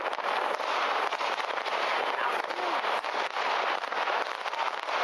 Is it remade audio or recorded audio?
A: recorded